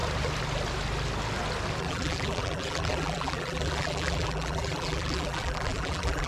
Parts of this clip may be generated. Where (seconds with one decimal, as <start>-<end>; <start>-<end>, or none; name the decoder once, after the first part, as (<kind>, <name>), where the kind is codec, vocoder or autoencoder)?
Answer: 1.8-6.3 (vocoder, BigVGAN v2)